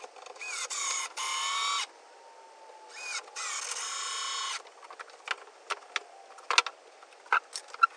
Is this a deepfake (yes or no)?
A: no